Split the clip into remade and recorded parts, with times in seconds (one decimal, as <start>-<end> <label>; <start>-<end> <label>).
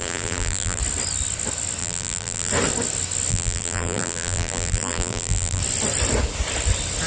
0.0-0.8 remade; 0.8-1.8 recorded; 1.8-2.5 remade; 2.5-3.3 recorded; 3.3-5.6 remade; 5.6-7.1 recorded